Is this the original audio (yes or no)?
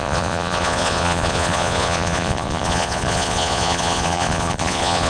no